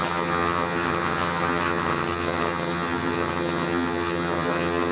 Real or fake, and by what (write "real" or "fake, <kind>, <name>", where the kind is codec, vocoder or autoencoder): fake, vocoder, HiFi-GAN